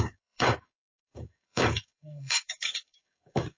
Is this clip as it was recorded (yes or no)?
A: no